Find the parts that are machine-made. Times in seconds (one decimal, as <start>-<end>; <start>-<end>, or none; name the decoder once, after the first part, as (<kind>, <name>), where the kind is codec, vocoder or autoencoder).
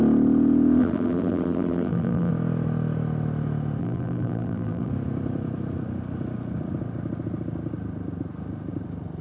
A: 0.8-2.3 (vocoder, BigVGAN v2); 3.8-4.9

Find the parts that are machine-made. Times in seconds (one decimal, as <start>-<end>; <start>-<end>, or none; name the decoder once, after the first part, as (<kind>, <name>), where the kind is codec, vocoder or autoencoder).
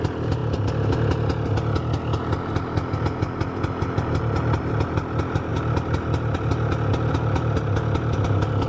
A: 5.5-6.5 (vocoder, BigVGAN v2)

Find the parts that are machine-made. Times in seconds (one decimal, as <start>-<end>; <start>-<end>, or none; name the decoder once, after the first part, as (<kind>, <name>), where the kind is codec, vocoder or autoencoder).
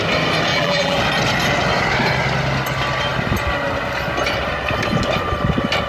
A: 0.5-1.0 (vocoder, BigVGAN v2)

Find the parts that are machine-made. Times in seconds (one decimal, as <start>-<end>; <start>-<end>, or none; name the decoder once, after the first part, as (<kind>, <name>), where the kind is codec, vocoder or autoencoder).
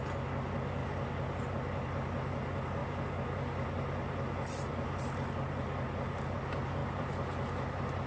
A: 0.8-1.4 (vocoder, BigVGAN v2); 2.8-6.2; 6.8-8.1